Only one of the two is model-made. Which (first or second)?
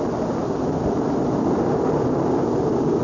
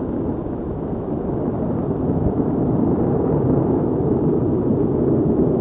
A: second